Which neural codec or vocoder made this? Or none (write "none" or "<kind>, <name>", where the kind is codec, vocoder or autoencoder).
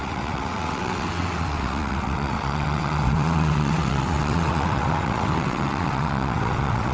vocoder, WaveNeXt